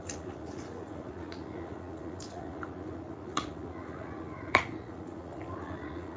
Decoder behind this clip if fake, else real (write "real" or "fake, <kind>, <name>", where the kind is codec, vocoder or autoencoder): fake, vocoder, Vocos